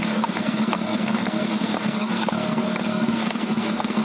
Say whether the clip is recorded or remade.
remade